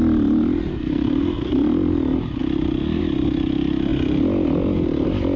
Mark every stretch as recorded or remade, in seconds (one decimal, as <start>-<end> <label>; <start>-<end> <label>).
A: 0.0-0.7 recorded; 0.7-1.5 remade; 1.5-5.4 recorded

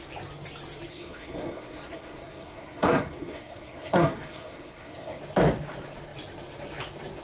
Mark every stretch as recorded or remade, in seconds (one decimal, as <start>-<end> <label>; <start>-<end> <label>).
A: 0.0-0.9 recorded; 0.9-5.2 remade; 5.2-7.2 recorded

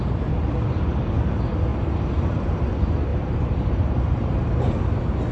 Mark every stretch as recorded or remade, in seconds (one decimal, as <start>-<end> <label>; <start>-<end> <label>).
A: 0.0-1.7 recorded; 1.7-2.6 remade; 2.6-3.1 recorded; 3.1-4.5 remade; 4.5-5.3 recorded

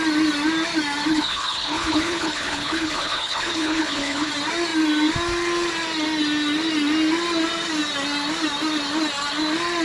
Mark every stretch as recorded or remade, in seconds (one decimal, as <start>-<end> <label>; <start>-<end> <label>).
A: 0.0-1.1 recorded; 1.1-4.3 remade; 4.3-9.8 recorded